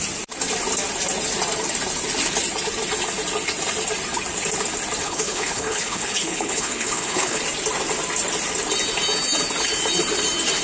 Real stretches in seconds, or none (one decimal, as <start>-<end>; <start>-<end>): 0.0-5.0; 7.4-10.6